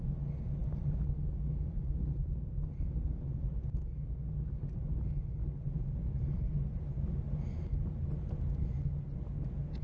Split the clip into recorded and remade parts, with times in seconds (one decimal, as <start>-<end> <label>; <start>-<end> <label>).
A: 0.0-9.8 recorded